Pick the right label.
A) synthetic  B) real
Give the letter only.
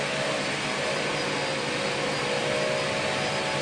B